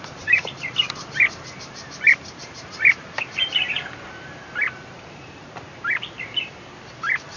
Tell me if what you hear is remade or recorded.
remade